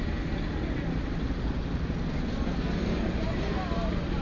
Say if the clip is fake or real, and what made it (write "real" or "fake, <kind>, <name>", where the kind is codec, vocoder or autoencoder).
real